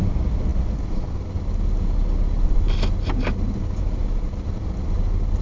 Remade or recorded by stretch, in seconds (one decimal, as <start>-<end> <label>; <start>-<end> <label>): 0.0-5.4 recorded